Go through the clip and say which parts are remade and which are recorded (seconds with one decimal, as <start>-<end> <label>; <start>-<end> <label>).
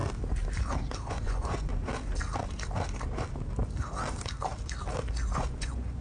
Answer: 0.0-1.1 recorded; 1.1-1.7 remade; 1.7-5.3 recorded; 5.3-6.0 remade